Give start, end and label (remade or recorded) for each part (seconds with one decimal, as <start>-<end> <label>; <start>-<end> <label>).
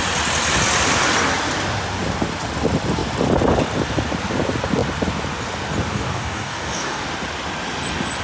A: 0.0-5.9 recorded; 5.9-7.0 remade; 7.0-8.2 recorded